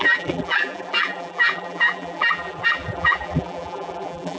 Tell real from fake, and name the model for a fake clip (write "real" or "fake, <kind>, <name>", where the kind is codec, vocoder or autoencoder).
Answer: fake, vocoder, BigVGAN v2